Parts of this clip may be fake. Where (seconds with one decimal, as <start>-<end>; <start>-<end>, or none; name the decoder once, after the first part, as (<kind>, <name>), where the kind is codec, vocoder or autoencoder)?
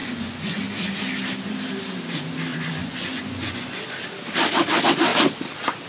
0.0-0.6 (vocoder, Vocos); 2.5-3.8